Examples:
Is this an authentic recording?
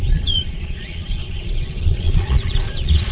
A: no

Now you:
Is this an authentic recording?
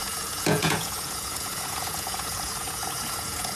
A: no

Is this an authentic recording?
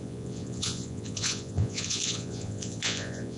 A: no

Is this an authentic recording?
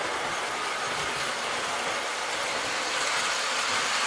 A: yes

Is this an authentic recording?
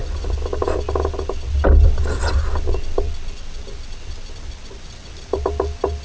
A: yes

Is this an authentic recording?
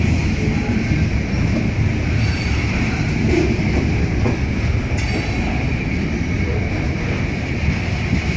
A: yes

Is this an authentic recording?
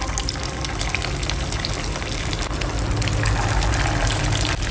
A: yes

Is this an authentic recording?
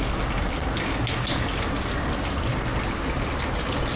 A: yes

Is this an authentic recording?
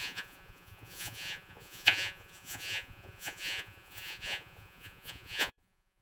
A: no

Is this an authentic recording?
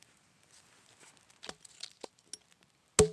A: yes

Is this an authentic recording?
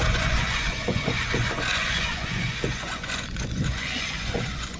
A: no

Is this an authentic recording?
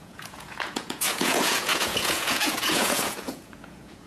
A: no